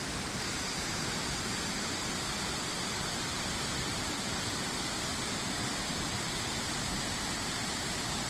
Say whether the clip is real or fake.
real